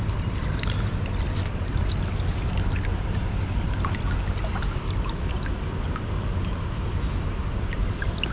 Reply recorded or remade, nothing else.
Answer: recorded